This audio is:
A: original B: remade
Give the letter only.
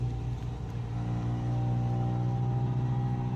A